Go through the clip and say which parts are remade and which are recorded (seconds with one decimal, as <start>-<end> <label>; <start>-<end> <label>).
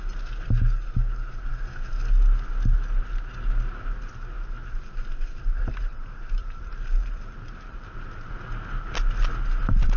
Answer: 0.0-4.6 recorded; 4.6-8.3 remade; 8.3-10.0 recorded